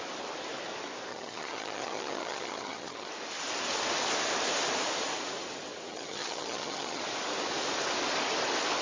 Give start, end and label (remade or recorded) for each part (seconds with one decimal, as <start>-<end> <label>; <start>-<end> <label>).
0.0-1.1 recorded; 1.1-3.1 remade; 3.1-5.9 recorded; 5.9-7.0 remade; 7.0-8.8 recorded